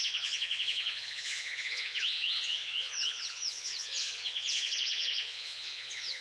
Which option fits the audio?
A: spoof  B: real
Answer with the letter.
A